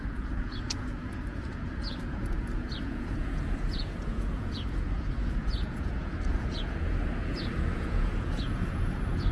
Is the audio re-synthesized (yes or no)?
yes